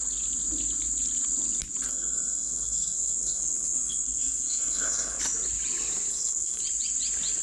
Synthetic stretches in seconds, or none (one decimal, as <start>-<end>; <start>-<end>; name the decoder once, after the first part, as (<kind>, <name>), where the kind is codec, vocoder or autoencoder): 1.9-5.2 (codec, SNAC); 6.1-6.6